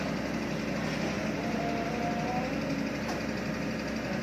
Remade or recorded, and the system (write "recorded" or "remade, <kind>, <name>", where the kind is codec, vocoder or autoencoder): recorded